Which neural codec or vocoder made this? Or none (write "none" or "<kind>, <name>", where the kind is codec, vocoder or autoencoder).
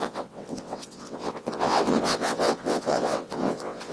vocoder, WaveNeXt